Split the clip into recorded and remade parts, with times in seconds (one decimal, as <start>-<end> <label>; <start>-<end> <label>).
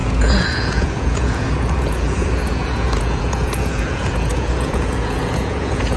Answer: 0.0-6.0 remade